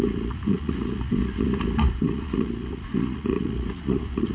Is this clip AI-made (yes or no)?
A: yes